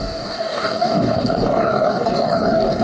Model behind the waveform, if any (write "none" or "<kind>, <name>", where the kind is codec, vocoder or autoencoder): codec, DAC